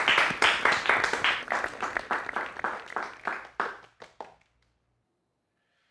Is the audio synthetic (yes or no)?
no